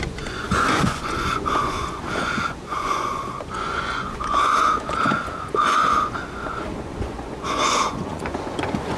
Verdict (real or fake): fake